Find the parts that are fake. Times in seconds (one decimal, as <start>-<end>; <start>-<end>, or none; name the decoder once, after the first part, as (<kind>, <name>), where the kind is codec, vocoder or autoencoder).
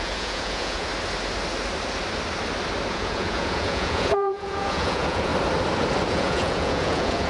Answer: 0.0-0.9 (vocoder, Vocos); 2.9-5.3; 6.1-7.3